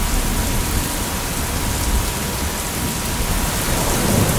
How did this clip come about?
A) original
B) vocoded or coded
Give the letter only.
A